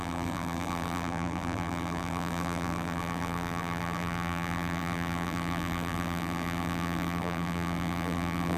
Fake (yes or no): yes